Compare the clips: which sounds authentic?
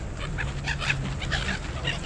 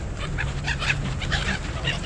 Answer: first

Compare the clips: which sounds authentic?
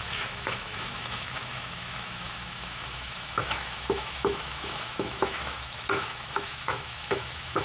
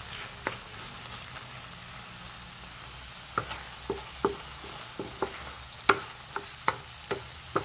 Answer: second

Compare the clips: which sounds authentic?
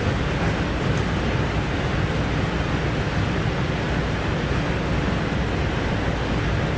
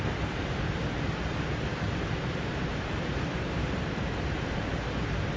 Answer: first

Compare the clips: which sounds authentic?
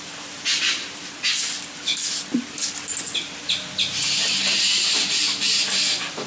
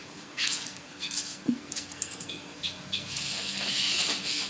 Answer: first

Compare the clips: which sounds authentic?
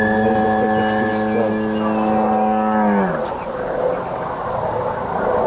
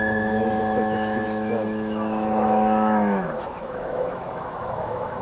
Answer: first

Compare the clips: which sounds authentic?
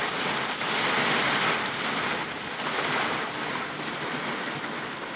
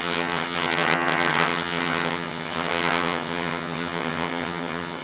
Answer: first